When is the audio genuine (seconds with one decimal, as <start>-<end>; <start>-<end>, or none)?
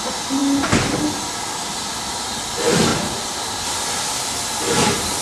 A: 0.0-1.7; 2.2-2.9; 3.7-5.2